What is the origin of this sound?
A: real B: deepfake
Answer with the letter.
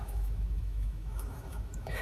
B